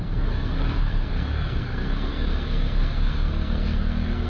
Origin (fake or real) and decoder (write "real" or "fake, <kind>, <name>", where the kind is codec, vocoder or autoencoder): fake, codec, SNAC